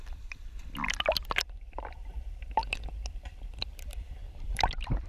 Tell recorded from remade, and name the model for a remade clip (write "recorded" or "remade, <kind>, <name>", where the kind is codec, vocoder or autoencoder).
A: recorded